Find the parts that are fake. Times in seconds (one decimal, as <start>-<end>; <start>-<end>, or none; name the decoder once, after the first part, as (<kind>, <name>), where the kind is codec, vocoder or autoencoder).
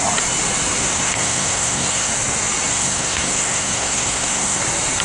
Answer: 0.8-2.1 (codec, SNAC); 2.7-4.6